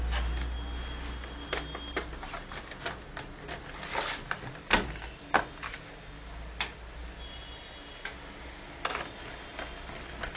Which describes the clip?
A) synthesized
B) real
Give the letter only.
B